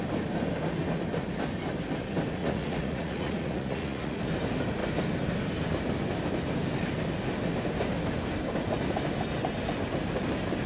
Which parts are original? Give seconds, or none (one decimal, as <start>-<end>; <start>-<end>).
0.0-2.4; 4.2-10.7